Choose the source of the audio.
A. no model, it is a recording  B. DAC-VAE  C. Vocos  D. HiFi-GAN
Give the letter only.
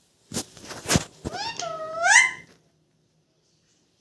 A